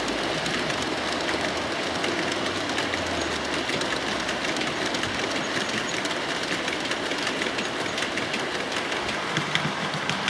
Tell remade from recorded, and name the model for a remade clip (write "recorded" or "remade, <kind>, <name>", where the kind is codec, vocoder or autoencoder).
recorded